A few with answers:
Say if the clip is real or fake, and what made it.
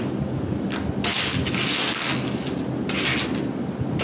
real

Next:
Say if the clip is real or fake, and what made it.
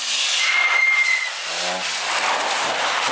real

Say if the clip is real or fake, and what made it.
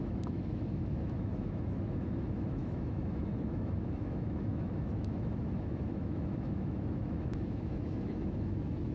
fake, autoencoder, DAC-VAE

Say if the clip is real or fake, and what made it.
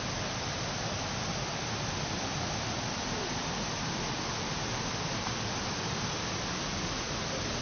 real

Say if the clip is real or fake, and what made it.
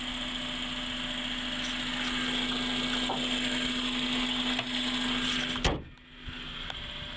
real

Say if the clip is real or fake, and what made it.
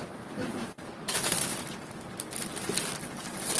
fake, vocoder, BigVGAN v2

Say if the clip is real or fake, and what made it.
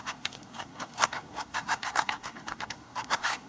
fake, codec, SNAC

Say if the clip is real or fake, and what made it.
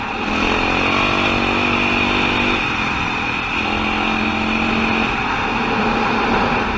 real